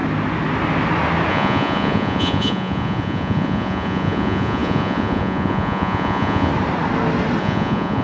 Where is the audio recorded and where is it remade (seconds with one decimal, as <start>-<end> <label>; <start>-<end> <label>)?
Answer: 0.0-1.3 recorded; 1.3-6.5 remade; 6.5-7.4 recorded; 7.4-8.0 remade